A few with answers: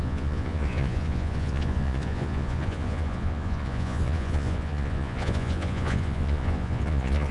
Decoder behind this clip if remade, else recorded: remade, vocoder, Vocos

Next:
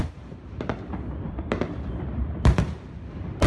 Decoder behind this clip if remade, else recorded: remade, vocoder, BigVGAN v2